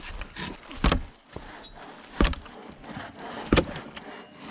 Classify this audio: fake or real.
real